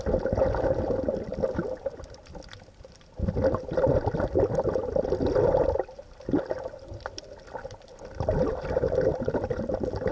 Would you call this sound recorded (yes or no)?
yes